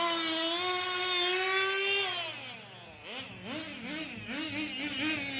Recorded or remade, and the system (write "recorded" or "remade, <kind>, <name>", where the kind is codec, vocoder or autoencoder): recorded